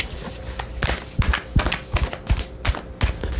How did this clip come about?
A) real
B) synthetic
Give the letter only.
A